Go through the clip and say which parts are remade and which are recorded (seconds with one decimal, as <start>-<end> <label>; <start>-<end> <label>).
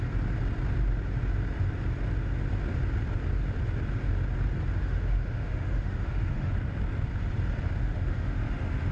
0.0-4.8 recorded; 4.8-6.5 remade; 6.5-7.8 recorded; 7.8-8.9 remade